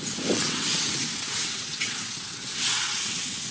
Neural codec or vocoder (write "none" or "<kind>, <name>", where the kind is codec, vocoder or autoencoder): vocoder, WaveNeXt